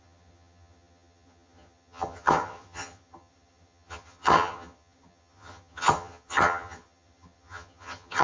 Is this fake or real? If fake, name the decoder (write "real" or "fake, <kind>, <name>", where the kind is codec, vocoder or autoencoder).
fake, vocoder, HiFi-GAN